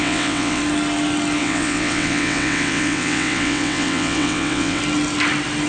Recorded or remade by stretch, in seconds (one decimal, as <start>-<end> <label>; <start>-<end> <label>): 0.0-0.6 remade; 0.6-1.4 recorded; 1.4-4.8 remade; 4.8-5.7 recorded